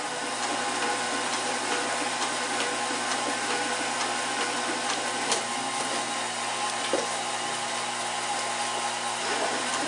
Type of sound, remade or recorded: recorded